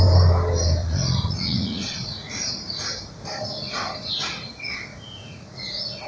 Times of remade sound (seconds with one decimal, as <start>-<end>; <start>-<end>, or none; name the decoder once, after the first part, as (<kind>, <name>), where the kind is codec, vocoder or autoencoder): 0.8-3.2 (vocoder, Vocos); 4.9-6.1